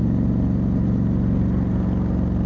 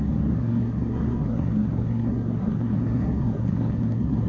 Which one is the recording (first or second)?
first